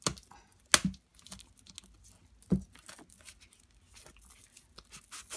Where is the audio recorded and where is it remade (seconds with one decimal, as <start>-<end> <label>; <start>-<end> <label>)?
0.0-5.4 recorded